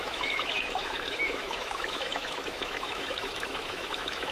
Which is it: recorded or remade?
remade